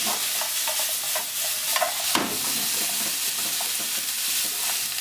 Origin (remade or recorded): recorded